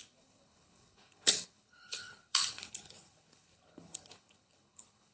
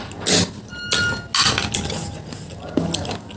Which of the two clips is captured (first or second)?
second